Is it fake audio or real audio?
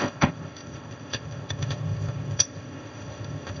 fake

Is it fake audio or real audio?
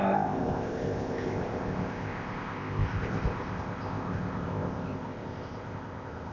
fake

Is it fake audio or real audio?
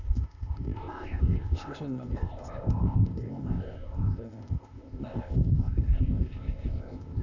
fake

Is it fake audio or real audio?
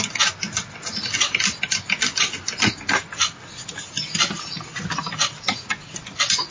real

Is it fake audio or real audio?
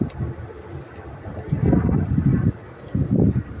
real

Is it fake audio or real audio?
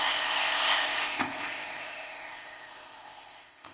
fake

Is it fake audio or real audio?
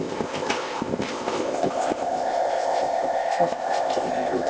fake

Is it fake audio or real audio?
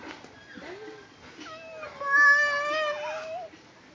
real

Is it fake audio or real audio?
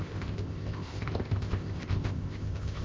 fake